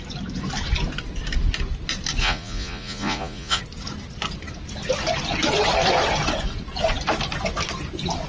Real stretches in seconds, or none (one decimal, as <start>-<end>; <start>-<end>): 0.0-2.2; 3.6-8.3